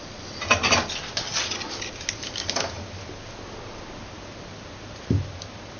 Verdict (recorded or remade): recorded